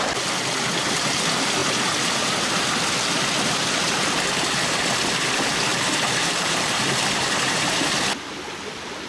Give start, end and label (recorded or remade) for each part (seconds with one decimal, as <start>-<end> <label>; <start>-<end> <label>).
0.0-5.7 recorded; 5.7-7.1 remade; 7.1-9.1 recorded